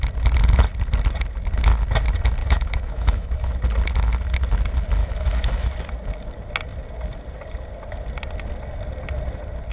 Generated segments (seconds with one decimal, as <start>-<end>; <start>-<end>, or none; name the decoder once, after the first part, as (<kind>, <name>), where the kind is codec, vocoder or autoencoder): 2.4-3.5 (autoencoder, DAC-VAE); 5.0-5.7